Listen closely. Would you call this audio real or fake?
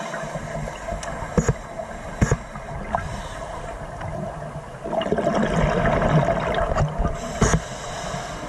real